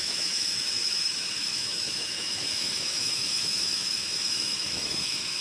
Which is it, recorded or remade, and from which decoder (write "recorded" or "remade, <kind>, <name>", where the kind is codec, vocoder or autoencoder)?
remade, autoencoder, DAC-VAE